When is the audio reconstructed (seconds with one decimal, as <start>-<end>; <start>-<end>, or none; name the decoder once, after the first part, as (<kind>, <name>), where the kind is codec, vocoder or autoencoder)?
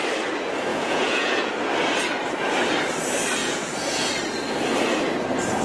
0.7-1.5 (vocoder, Vocos); 3.4-4.1